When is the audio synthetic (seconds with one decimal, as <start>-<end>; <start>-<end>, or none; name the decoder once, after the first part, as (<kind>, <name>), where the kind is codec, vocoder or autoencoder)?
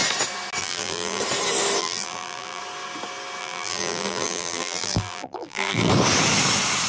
0.6-1.2 (vocoder, BigVGAN v2); 1.8-2.6; 3.4-5.9